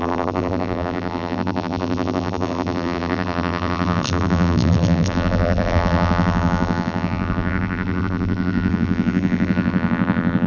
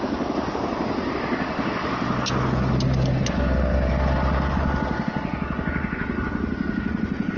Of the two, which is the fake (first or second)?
first